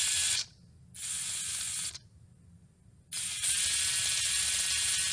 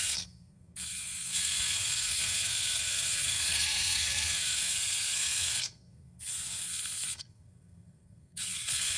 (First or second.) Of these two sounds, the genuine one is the first